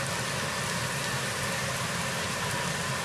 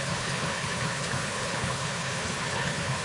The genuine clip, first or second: first